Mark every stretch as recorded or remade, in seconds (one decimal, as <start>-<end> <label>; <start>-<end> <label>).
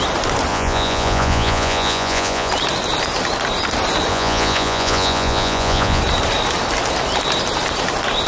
0.0-0.5 recorded; 0.5-2.5 remade; 2.5-4.1 recorded; 4.1-6.0 remade; 6.0-8.3 recorded